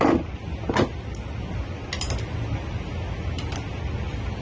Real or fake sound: real